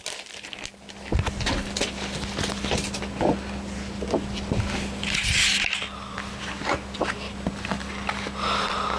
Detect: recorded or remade recorded